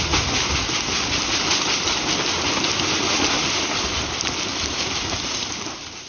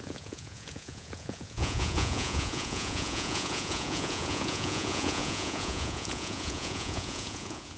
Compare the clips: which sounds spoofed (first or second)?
second